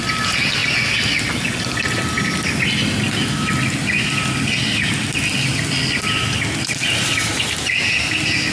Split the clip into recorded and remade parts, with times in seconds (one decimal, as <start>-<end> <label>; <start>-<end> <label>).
0.0-8.5 recorded